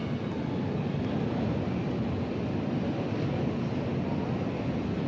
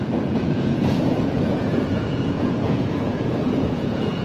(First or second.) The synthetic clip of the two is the second